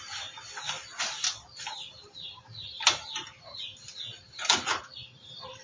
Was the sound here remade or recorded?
recorded